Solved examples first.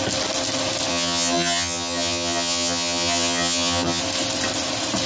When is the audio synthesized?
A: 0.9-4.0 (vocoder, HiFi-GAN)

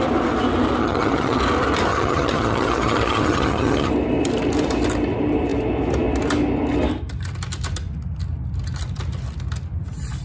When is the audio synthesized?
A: 0.8-1.4 (vocoder, HiFi-GAN); 1.9-3.9